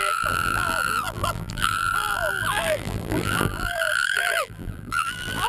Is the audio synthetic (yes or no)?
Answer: yes